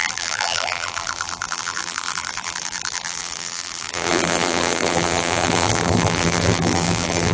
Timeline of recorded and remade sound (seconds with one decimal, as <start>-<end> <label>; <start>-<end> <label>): 0.0-7.3 remade